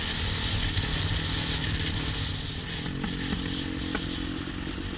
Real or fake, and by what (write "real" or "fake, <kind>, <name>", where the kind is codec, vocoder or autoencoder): real